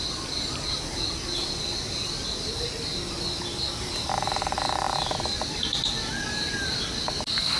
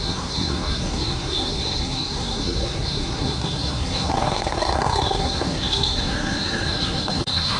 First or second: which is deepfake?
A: second